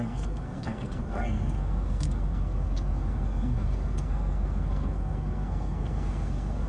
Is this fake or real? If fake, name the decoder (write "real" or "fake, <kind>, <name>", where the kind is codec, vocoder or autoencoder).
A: fake, codec, SNAC